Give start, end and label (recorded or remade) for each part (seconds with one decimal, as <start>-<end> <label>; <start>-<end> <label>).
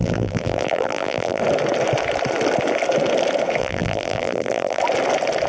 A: 0.0-1.4 remade; 1.4-3.6 recorded; 3.6-4.8 remade; 4.8-5.5 recorded